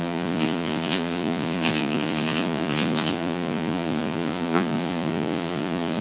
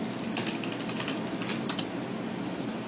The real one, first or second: second